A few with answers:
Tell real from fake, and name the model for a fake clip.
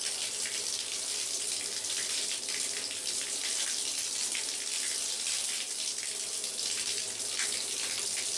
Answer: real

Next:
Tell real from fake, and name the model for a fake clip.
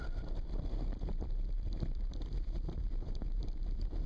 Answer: fake, vocoder, BigVGAN v2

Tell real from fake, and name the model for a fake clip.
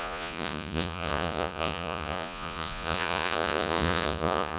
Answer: fake, vocoder, Vocos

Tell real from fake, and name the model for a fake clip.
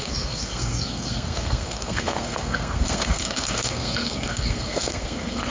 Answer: fake, codec, SNAC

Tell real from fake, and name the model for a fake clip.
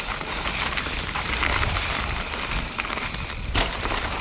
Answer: real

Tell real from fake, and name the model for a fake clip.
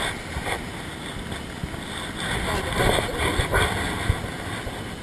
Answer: real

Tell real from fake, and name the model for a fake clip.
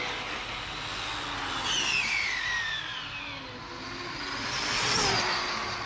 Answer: real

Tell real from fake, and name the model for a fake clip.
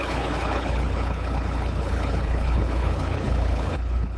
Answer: fake, codec, HILCodec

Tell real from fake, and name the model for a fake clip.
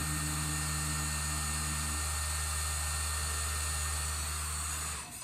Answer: real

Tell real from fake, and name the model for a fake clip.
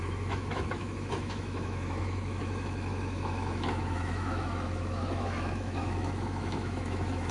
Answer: fake, autoencoder, DAC-VAE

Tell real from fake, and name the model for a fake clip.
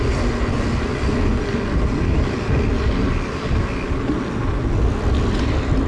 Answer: real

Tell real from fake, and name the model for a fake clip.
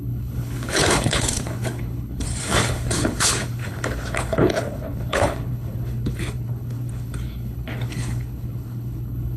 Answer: fake, codec, HILCodec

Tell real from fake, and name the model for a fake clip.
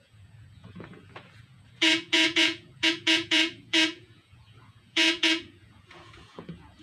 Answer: fake, vocoder, Vocos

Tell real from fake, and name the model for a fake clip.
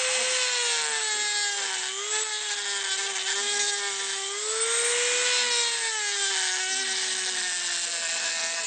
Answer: real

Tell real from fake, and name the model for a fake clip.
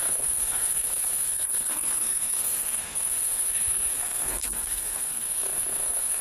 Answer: fake, codec, SNAC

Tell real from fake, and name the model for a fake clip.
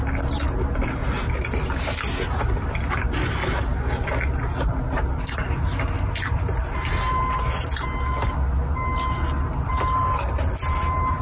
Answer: real